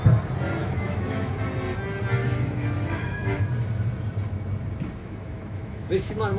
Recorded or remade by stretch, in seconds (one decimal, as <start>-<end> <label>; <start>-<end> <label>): 0.0-0.6 recorded; 0.6-1.3 remade; 1.3-2.2 recorded; 2.2-3.4 remade; 3.4-5.0 recorded; 5.0-6.4 remade